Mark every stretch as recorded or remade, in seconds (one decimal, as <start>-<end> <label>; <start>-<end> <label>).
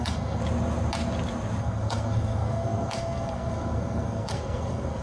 0.0-0.4 remade; 0.4-1.6 recorded; 1.6-5.0 remade